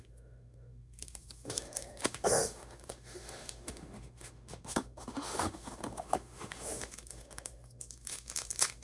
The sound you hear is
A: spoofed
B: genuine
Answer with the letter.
A